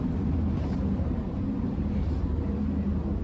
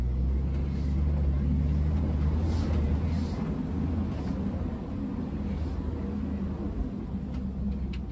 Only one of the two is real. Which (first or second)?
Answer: second